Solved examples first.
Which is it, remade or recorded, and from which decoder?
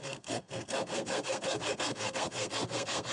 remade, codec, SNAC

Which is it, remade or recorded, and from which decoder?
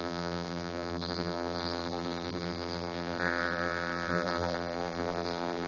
remade, vocoder, BigVGAN v2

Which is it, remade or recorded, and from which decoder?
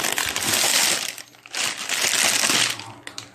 recorded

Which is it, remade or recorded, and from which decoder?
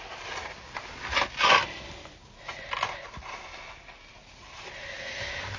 recorded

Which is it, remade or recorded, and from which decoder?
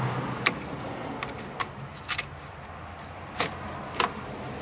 recorded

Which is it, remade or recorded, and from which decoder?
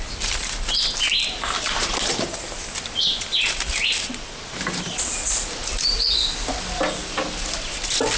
recorded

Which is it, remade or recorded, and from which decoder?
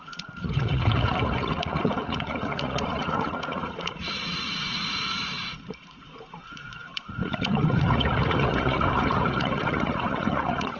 remade, vocoder, Vocos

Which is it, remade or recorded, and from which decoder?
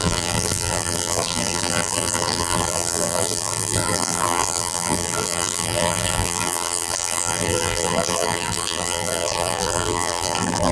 remade, vocoder, BigVGAN v2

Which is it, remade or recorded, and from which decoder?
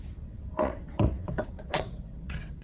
remade, vocoder, WaveNeXt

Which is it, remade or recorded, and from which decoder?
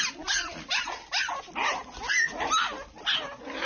recorded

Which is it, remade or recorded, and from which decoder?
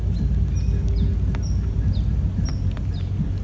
recorded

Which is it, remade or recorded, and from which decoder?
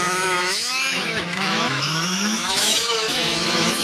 remade, autoencoder, DAC-VAE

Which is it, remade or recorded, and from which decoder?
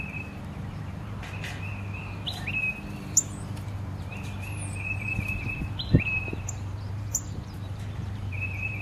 remade, vocoder, BigVGAN v2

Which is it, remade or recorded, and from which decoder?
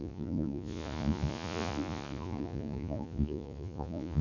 remade, vocoder, Vocos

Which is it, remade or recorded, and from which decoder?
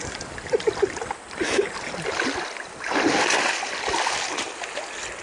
recorded